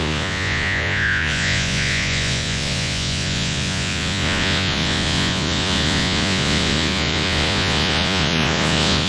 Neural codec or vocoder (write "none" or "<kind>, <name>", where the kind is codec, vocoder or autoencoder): vocoder, Vocos